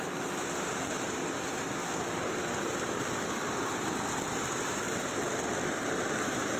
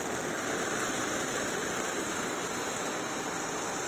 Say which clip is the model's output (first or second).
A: first